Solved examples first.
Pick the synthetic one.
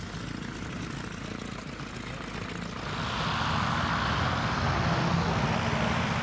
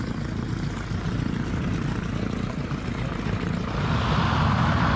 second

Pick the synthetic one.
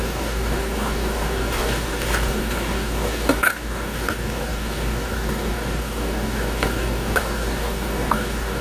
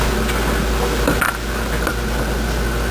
first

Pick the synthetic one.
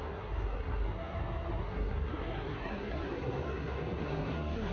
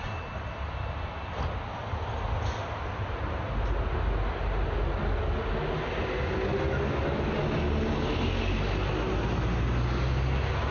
first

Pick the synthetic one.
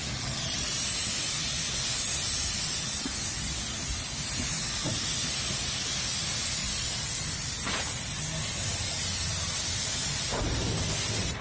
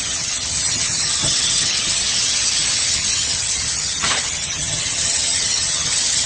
second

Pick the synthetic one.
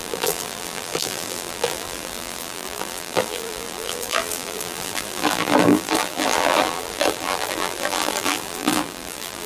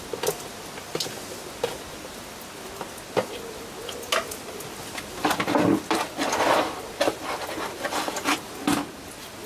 first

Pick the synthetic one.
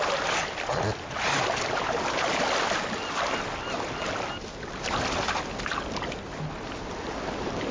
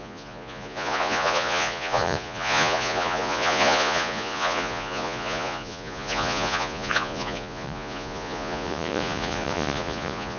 second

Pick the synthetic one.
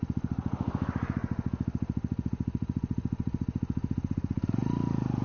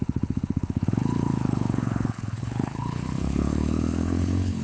second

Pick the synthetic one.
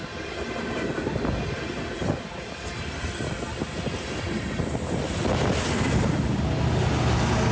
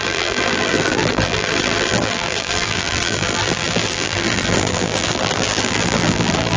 second